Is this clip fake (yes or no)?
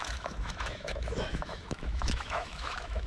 yes